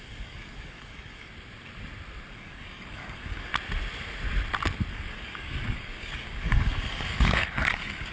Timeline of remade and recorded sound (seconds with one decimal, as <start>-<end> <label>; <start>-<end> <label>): 0.0-1.3 remade; 1.3-2.3 recorded; 2.3-3.5 remade; 3.5-4.9 recorded; 4.9-8.1 remade